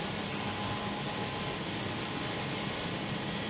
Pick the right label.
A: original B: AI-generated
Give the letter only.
A